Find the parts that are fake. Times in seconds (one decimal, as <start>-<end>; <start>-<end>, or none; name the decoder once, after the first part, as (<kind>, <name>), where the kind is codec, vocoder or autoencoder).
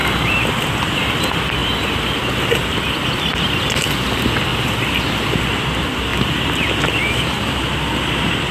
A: 0.0-0.9 (vocoder, BigVGAN v2); 1.6-2.6; 4.5-5.6; 6.1-8.1